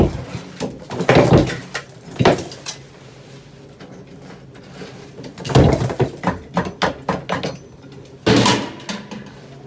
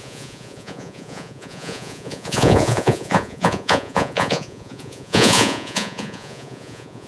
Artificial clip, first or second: second